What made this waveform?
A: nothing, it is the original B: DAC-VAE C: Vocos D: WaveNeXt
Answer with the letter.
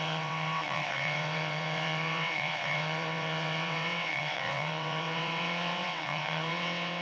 D